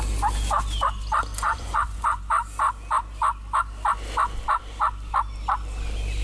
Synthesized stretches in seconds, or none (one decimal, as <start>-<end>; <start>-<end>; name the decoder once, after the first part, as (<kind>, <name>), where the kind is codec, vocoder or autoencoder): 1.3-2.2 (vocoder, Vocos)